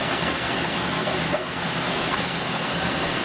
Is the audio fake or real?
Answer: fake